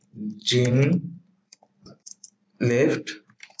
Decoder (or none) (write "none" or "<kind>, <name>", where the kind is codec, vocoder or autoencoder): vocoder, BigVGAN v2